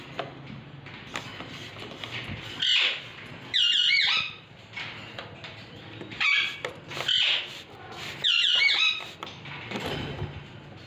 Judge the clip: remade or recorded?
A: recorded